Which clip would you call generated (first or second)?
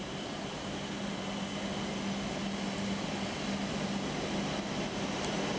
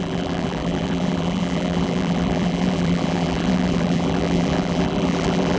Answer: second